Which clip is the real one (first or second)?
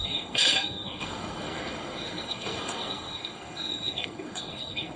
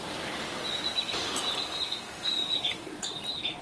second